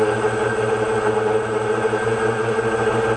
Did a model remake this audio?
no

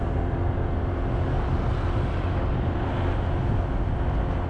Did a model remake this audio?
no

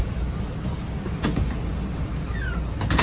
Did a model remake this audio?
no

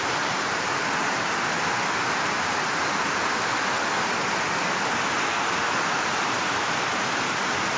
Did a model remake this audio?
no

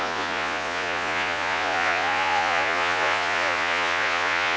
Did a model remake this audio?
yes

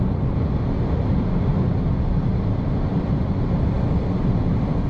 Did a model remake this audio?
no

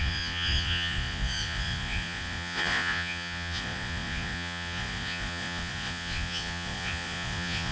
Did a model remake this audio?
yes